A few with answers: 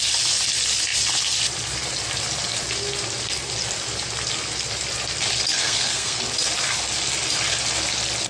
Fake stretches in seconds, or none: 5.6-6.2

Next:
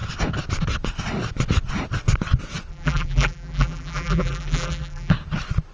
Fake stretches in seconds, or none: 2.7-5.1

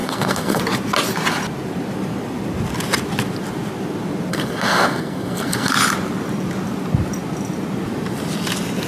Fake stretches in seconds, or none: 0.0-0.6; 4.3-5.7

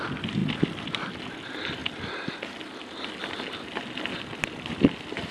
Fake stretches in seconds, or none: none

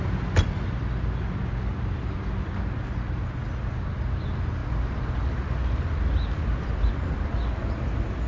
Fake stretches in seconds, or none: none

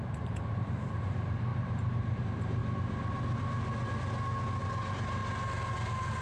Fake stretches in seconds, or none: 0.0-2.6; 4.6-5.2

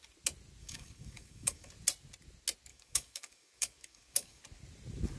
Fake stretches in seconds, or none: 0.6-1.7; 2.7-4.4

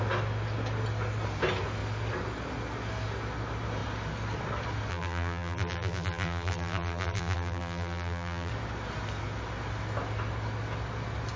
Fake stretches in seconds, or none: 4.9-8.5